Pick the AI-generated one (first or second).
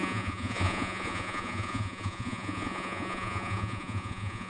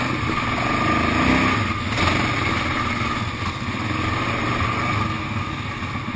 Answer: first